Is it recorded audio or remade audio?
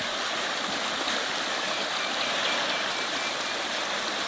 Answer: recorded